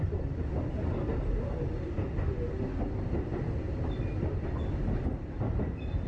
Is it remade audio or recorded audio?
recorded